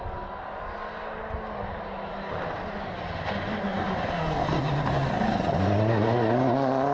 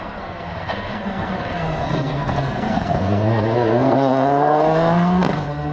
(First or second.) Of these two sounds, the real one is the first